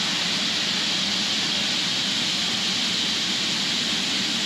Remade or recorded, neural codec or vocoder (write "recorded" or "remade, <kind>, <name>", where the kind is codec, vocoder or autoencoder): recorded